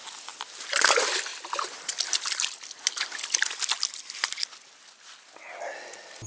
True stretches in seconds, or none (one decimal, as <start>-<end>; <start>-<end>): 0.0-6.3